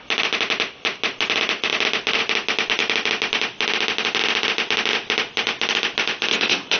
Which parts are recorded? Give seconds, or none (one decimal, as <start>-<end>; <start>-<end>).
0.0-6.3